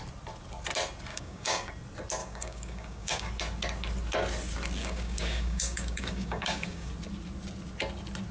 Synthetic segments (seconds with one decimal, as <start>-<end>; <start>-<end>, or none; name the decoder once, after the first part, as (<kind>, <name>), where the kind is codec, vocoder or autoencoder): 1.1-1.7 (codec, DAC); 2.2-3.3; 4.8-6.9